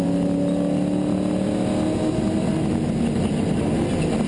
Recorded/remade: recorded